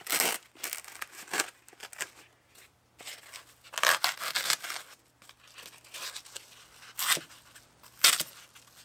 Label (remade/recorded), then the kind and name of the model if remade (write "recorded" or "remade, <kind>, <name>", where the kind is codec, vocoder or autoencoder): recorded